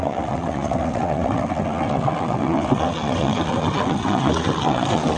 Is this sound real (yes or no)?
no